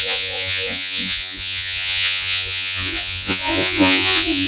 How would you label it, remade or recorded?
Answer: remade